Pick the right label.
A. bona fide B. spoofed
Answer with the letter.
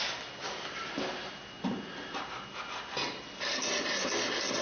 A